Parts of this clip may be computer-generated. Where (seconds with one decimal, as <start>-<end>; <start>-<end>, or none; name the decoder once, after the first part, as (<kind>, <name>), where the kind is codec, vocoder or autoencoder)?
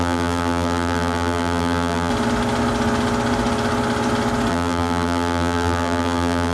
0.0-2.1 (vocoder, BigVGAN v2); 4.5-6.5